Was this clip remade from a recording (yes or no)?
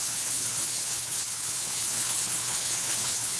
yes